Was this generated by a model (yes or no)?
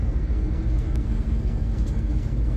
yes